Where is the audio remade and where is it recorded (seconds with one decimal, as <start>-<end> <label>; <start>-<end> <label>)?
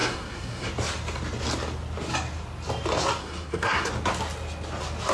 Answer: 0.0-0.7 remade; 0.7-3.2 recorded; 3.2-3.9 remade; 3.9-5.1 recorded